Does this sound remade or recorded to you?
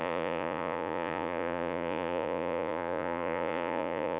remade